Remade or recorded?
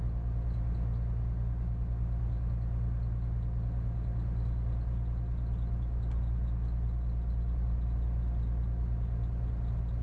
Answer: recorded